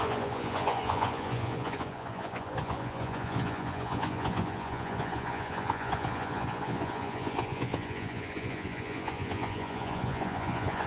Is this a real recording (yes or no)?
no